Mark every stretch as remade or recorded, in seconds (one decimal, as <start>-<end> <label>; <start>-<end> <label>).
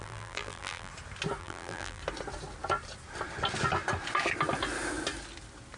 0.0-0.9 remade; 0.9-1.4 recorded; 1.4-2.0 remade; 2.0-5.8 recorded